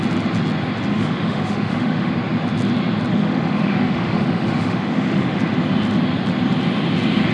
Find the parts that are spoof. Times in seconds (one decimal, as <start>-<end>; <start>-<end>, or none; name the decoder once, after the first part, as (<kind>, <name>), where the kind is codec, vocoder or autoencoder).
0.9-2.1 (autoencoder, DAC-VAE); 3.1-5.4